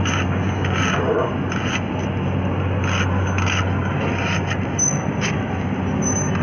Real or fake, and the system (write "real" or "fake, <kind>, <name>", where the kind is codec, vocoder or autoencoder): real